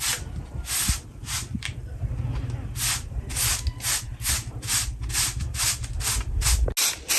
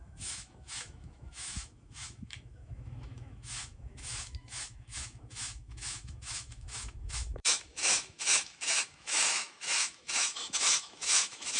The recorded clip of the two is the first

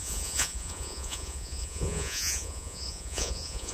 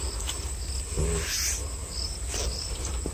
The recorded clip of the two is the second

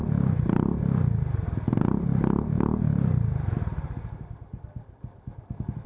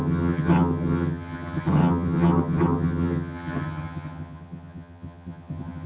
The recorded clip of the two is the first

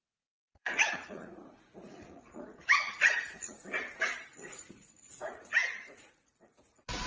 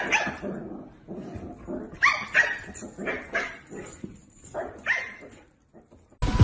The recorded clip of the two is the second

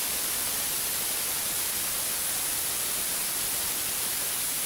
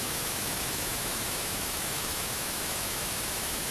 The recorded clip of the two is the first